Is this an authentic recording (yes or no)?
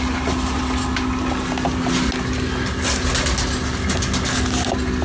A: yes